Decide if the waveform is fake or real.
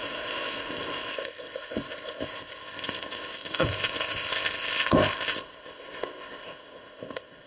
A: fake